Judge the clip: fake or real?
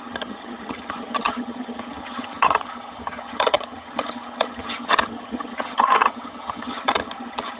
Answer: fake